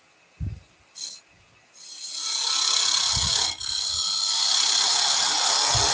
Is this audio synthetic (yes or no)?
no